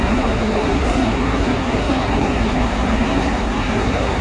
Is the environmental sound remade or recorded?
remade